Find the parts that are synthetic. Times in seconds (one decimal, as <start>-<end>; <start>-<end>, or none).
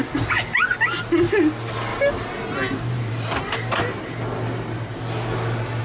1.9-3.7